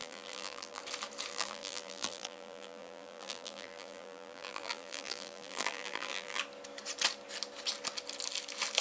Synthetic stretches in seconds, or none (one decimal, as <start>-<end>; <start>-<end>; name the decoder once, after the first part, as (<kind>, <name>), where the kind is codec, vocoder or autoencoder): 0.0-0.8 (vocoder, BigVGAN v2); 1.3-6.4